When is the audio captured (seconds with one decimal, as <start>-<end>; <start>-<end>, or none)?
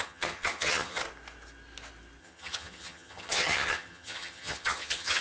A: 1.0-2.2